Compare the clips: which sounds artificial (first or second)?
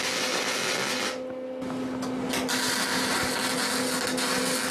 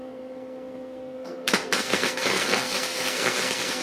second